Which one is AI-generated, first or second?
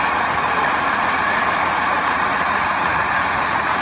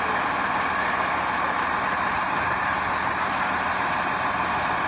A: first